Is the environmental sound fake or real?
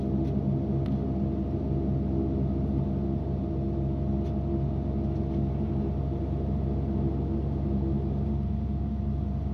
real